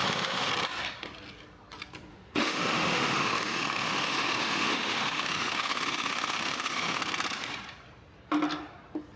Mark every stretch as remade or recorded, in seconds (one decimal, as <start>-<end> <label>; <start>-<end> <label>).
0.0-0.5 remade; 0.5-2.1 recorded; 2.1-7.0 remade; 7.0-9.2 recorded